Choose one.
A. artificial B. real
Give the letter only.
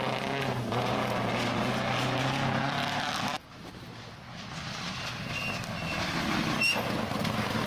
B